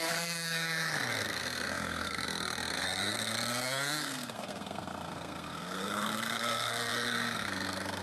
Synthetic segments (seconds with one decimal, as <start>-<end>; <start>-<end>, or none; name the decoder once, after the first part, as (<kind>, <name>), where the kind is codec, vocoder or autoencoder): 0.0-8.0 (codec, SNAC)